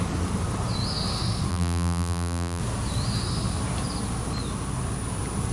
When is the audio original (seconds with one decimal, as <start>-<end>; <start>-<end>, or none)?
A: 0.0-1.5; 2.6-5.5